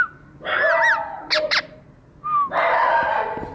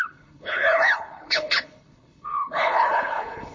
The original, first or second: first